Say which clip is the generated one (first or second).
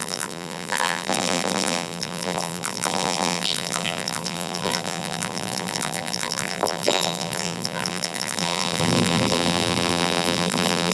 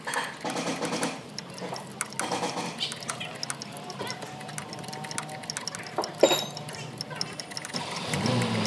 first